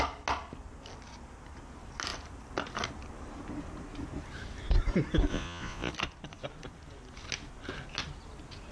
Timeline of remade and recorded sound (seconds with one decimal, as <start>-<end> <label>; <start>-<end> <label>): 0.0-5.3 recorded; 5.3-5.9 remade; 5.9-8.7 recorded